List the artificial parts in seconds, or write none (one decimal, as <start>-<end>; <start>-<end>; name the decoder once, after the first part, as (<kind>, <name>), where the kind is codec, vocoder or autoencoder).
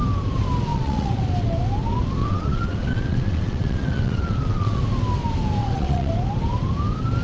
0.7-1.2 (vocoder, WaveNeXt); 2.2-4.8; 5.6-6.1